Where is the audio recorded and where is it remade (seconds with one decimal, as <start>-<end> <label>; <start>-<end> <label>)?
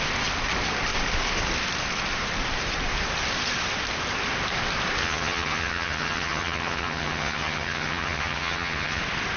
0.0-5.0 recorded; 5.0-9.0 remade; 9.0-9.4 recorded